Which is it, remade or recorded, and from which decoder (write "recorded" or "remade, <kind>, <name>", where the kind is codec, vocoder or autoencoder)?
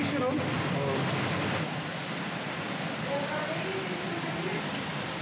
recorded